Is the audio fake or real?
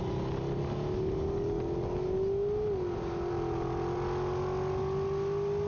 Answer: real